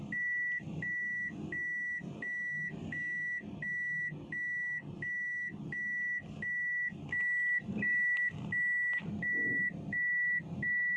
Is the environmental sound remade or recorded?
recorded